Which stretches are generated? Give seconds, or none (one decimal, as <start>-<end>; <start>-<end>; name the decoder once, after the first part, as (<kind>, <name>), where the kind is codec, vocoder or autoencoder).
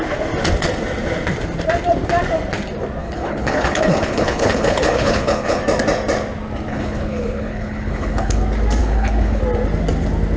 3.0-5.6 (codec, HILCodec); 6.7-8.4; 8.8-9.4